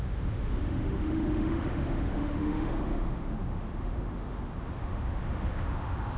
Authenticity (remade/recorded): remade